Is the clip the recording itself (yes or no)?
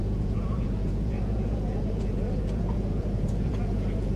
no